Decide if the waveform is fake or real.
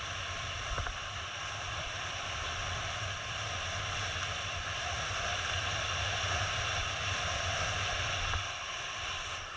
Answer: fake